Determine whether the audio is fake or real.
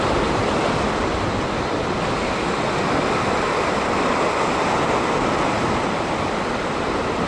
real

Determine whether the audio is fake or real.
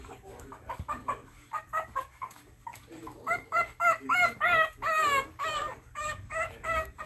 fake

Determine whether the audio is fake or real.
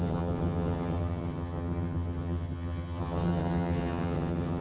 fake